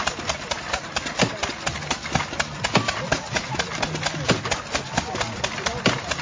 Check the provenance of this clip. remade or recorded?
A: recorded